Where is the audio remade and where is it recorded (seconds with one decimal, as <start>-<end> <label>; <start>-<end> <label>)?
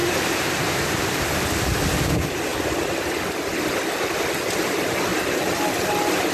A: 0.0-1.0 remade; 1.0-6.3 recorded